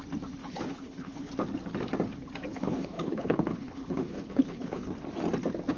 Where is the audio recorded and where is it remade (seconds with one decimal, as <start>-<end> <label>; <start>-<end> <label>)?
0.0-0.4 recorded; 0.4-1.3 remade; 1.3-2.5 recorded; 2.5-4.9 remade; 4.9-5.8 recorded